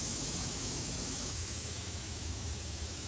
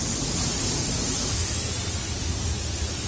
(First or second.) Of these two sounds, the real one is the second